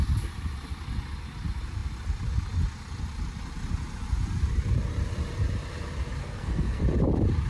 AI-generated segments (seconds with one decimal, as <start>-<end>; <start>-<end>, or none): 6.2-6.8